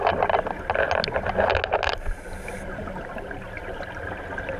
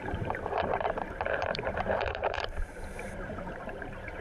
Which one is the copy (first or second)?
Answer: second